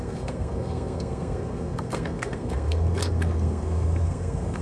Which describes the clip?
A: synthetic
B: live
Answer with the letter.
A